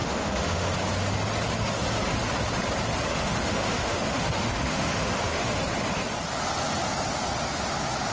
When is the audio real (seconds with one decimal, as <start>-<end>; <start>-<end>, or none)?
0.7-3.1; 5.5-8.1